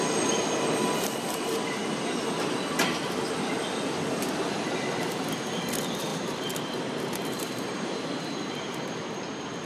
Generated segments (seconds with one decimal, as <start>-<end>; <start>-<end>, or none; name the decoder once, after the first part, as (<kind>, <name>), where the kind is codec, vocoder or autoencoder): 6.1-9.0 (vocoder, BigVGAN v2)